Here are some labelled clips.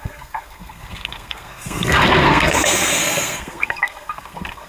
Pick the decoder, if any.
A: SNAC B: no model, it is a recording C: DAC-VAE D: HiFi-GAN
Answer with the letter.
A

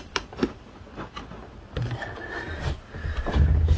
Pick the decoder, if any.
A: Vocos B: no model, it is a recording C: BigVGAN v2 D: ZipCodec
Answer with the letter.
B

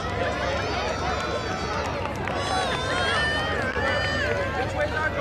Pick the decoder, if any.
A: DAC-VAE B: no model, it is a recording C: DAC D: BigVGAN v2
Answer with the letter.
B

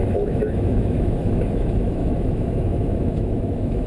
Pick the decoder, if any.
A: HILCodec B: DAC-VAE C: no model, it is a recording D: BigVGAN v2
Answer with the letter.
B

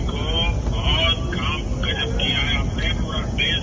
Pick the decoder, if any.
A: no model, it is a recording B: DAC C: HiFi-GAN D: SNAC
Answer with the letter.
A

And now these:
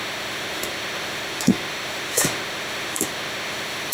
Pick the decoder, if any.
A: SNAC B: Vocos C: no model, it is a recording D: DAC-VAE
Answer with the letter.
D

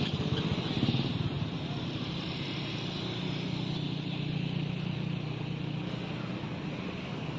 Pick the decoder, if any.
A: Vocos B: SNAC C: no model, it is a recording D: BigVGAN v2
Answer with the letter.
C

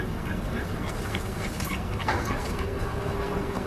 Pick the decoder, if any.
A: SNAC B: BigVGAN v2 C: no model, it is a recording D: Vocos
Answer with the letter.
A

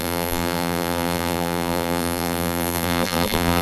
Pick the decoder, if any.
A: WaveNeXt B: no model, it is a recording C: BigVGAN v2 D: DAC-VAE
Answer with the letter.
C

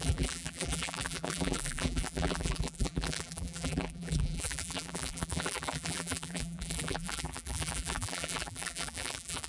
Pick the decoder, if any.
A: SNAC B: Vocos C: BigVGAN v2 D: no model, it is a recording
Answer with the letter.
C